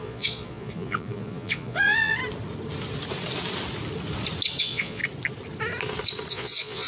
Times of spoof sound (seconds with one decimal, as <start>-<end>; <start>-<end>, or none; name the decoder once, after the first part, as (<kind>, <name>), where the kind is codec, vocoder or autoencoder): 0.0-2.2 (vocoder, Vocos); 4.6-5.0; 6.3-6.9